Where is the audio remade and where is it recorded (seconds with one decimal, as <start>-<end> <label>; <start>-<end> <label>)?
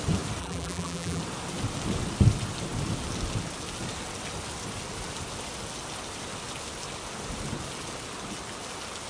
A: 0.0-0.4 recorded; 0.4-1.2 remade; 1.2-9.1 recorded